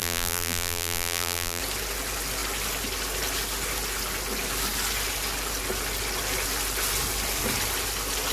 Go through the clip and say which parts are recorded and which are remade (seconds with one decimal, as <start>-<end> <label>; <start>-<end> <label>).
0.0-1.6 remade; 1.6-8.3 recorded